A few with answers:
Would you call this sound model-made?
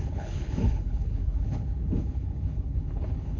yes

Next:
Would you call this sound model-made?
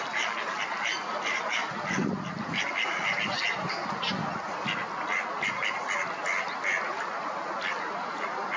no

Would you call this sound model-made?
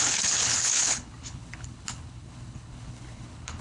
yes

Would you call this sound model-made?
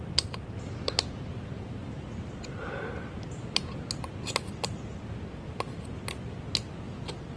no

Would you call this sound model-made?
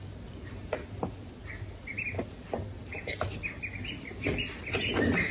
no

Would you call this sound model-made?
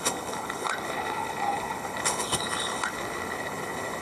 yes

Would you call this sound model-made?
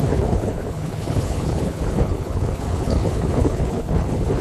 yes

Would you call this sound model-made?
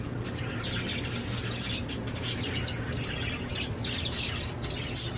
no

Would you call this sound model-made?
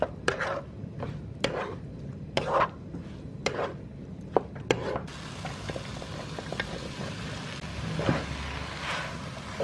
no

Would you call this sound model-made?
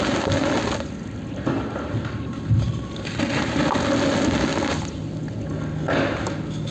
no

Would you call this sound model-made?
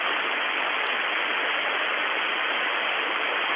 no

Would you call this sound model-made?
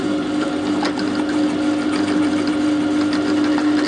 no